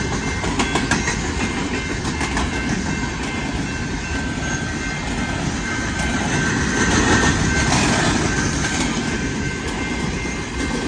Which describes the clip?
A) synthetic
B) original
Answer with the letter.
B